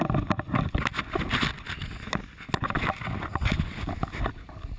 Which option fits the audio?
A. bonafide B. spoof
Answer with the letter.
A